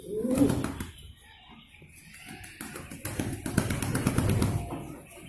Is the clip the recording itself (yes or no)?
yes